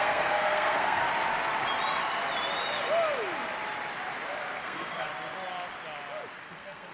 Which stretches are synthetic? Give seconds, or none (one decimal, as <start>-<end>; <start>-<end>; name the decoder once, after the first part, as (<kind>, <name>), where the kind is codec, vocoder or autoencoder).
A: 0.0-1.0 (codec, SNAC); 4.6-5.1; 6.5-6.9